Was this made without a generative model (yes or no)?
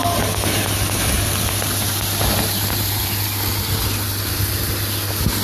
yes